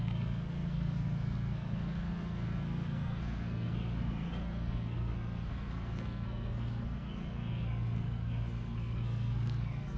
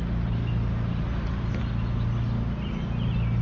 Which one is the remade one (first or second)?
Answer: first